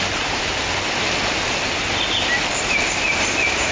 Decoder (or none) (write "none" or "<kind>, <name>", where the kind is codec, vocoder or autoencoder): none